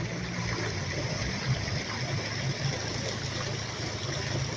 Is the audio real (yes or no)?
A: yes